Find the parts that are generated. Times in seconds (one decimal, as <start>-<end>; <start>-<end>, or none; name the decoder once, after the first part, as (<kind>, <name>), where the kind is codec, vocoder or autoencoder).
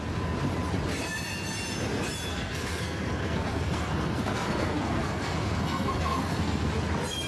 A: 2.3-6.7 (codec, SNAC)